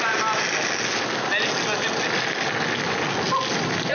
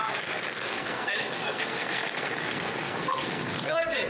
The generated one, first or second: second